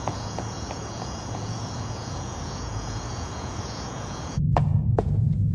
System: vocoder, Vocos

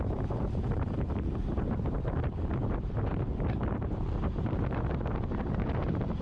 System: vocoder, BigVGAN v2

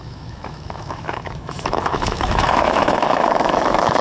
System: autoencoder, DAC-VAE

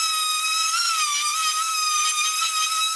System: none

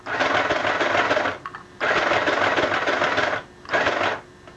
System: none